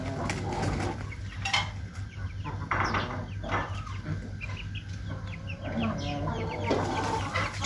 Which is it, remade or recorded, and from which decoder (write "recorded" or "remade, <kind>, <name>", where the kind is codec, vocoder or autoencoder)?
recorded